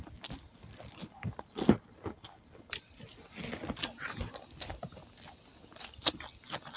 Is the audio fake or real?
real